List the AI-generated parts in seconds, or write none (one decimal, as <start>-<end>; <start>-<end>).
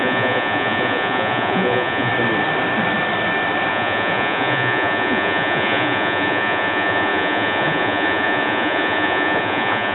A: 0.0-2.1; 3.7-9.9